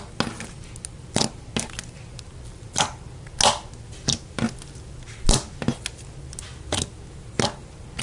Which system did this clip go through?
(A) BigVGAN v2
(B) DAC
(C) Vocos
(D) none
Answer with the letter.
D